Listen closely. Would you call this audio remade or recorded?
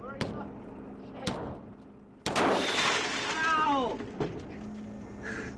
recorded